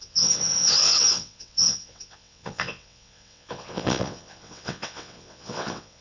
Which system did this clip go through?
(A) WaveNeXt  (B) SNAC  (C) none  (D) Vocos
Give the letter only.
A